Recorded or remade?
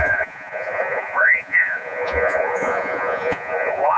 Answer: remade